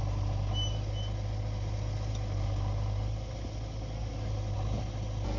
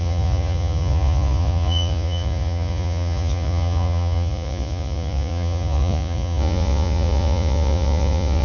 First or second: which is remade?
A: second